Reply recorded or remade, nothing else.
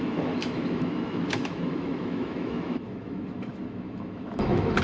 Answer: remade